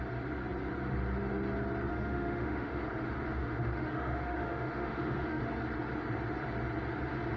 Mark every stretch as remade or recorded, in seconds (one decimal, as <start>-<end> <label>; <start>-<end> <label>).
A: 0.0-1.9 recorded; 1.9-2.8 remade; 2.8-3.4 recorded; 3.4-5.4 remade; 5.4-7.4 recorded